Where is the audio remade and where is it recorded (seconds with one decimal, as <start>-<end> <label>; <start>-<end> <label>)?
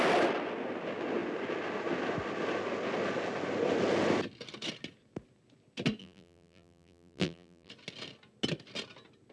0.0-6.0 recorded; 6.0-7.7 remade; 7.7-9.3 recorded